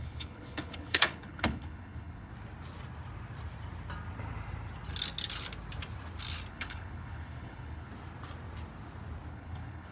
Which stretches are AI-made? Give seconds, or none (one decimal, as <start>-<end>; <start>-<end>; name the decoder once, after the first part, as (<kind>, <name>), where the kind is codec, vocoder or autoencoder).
0.0-2.3 (codec, HILCodec); 6.5-7.9; 9.3-9.9